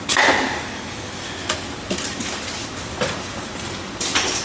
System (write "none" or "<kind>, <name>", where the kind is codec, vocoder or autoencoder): none